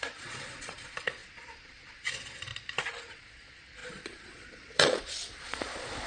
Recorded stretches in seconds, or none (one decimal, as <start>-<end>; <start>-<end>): 2.5-3.1

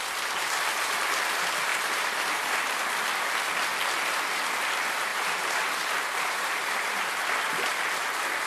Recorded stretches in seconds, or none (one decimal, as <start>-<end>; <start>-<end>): 0.0-1.7; 2.5-5.1; 7.1-8.5

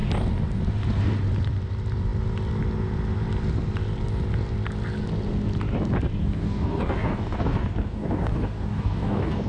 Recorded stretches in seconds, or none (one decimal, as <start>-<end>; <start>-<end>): 0.0-6.2

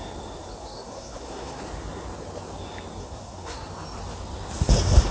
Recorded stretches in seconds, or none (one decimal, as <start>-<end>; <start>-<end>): 0.0-0.6; 1.6-3.0; 3.7-5.1

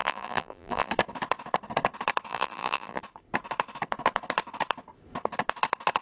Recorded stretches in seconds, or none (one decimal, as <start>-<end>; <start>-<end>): 0.9-2.3; 3.0-6.0

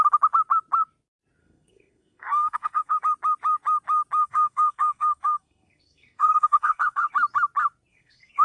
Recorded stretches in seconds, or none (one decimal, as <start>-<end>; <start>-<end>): 0.0-1.4; 3.0-4.2; 7.1-7.9